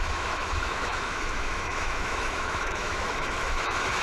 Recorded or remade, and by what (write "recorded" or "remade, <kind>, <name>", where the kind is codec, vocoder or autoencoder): remade, autoencoder, DAC-VAE